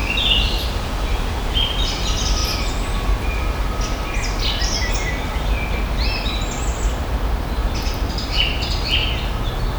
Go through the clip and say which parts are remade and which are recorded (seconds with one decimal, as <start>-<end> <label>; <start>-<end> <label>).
0.0-9.8 recorded